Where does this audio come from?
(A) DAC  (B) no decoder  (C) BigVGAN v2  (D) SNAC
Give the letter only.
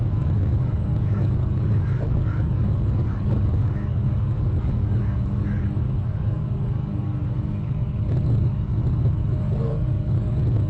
A